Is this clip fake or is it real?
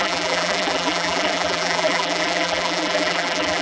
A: fake